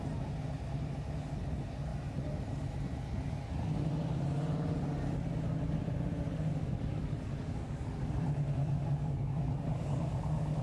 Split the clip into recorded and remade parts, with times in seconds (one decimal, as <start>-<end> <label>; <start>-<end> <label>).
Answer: 0.0-6.5 recorded; 6.5-8.2 remade; 8.2-8.6 recorded; 8.6-10.6 remade